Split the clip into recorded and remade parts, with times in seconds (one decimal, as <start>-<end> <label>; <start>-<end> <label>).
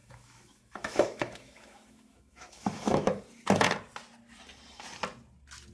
0.0-3.2 remade; 3.2-5.7 recorded